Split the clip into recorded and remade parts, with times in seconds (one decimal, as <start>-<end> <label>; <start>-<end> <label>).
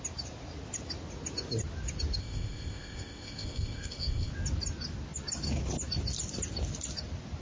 0.0-2.2 recorded; 2.2-4.3 remade; 4.3-7.4 recorded